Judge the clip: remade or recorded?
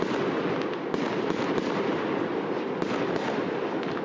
recorded